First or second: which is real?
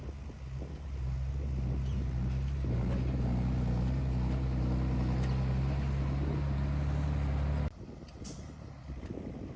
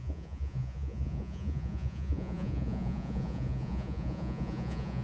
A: first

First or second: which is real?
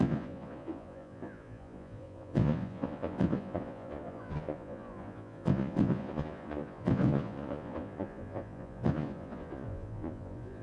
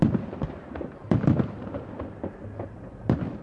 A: second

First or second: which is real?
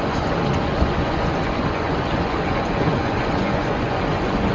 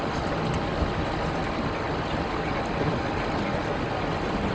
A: second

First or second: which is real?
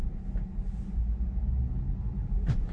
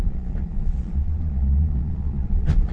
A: first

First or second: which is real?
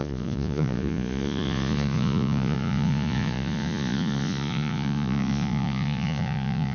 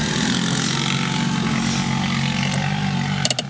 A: second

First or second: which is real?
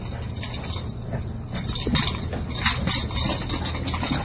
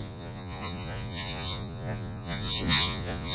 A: first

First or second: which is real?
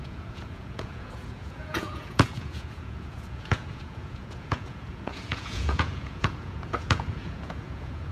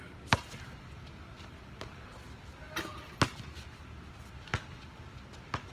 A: second